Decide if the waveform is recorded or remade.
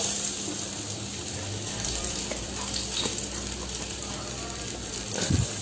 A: remade